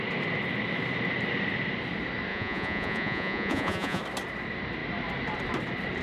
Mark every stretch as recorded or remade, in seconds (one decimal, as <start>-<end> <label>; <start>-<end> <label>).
0.0-2.3 recorded; 2.3-4.0 remade; 4.0-6.0 recorded